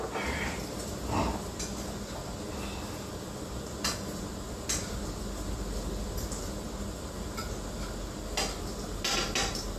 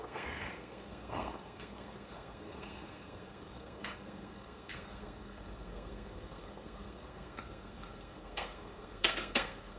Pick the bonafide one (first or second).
first